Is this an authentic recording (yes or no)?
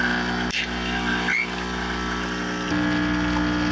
yes